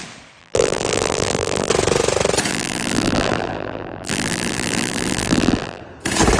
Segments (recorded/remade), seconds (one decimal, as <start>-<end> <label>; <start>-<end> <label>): 0.0-0.4 recorded; 0.4-1.7 remade; 1.7-2.5 recorded; 2.5-5.8 remade; 5.8-6.4 recorded